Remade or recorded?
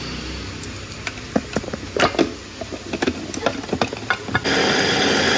recorded